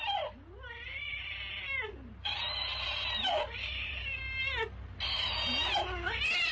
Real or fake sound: real